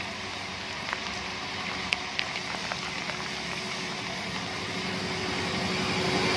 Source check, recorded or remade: recorded